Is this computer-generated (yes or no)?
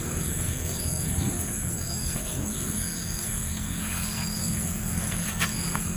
yes